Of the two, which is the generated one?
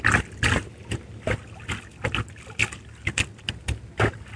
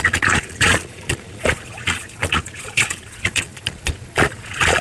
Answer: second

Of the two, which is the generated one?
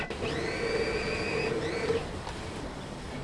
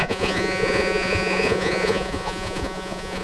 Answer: second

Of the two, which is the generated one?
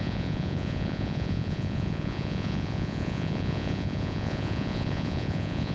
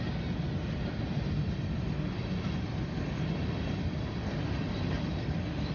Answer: first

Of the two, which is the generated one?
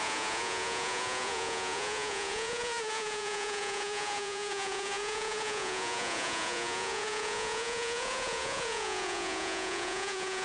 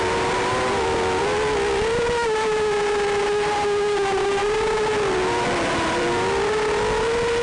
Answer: first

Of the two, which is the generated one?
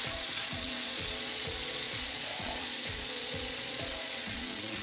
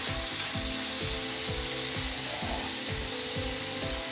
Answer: first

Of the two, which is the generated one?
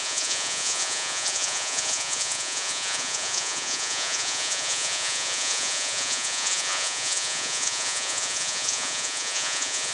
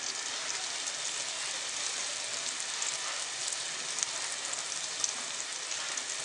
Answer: first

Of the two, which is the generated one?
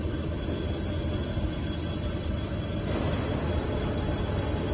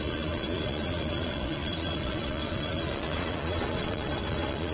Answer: second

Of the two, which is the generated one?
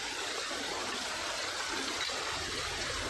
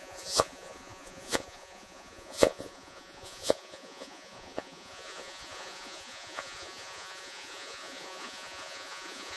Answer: second